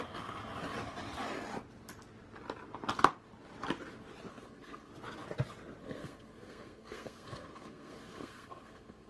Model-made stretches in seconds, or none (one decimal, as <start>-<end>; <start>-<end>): 4.3-4.9; 5.8-9.1